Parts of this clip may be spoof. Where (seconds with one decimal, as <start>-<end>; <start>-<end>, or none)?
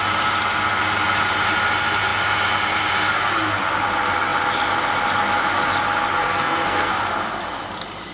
6.2-6.9